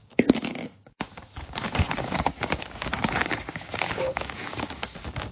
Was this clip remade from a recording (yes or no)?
yes